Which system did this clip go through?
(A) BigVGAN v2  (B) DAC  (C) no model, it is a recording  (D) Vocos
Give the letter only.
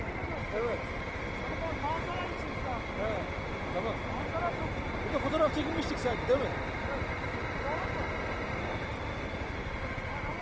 C